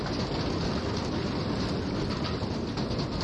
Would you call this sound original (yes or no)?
yes